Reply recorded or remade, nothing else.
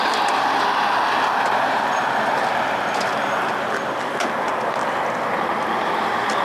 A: recorded